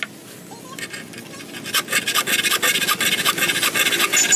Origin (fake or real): real